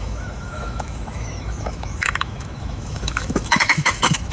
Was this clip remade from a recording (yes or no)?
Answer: yes